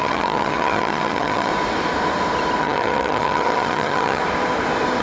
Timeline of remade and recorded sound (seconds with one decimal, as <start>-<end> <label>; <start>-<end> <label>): 0.0-1.5 remade; 1.5-2.6 recorded; 2.6-4.2 remade; 4.2-5.0 recorded